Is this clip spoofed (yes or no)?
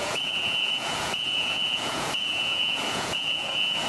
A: yes